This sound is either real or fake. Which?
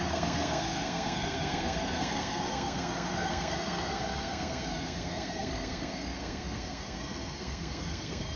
fake